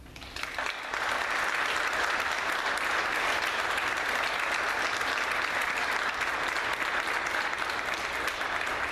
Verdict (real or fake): real